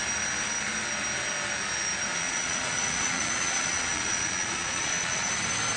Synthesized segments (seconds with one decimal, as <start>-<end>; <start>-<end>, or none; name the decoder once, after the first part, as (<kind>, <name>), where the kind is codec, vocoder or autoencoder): 2.1-5.3 (vocoder, Vocos)